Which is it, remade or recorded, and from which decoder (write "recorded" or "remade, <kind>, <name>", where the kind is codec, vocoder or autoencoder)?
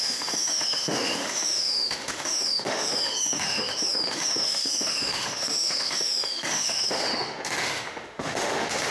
remade, autoencoder, DAC-VAE